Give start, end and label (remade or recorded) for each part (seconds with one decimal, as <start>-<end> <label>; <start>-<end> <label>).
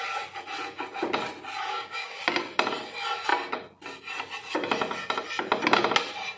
0.0-1.7 recorded; 1.7-2.2 remade; 2.2-6.4 recorded